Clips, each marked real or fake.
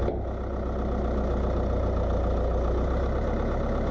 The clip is real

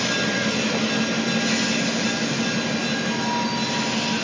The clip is real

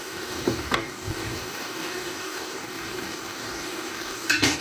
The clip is fake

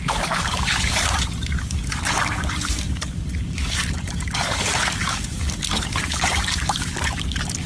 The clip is fake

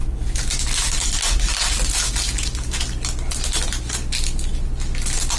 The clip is real